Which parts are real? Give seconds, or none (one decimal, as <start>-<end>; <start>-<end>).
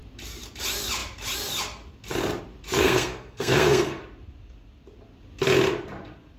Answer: 0.0-2.8; 4.0-6.4